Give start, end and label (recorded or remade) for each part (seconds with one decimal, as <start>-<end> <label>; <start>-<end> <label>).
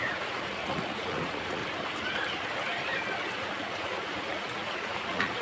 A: 0.0-1.6 remade; 1.6-3.3 recorded; 3.3-5.4 remade